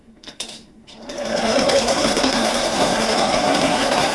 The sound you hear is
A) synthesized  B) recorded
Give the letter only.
A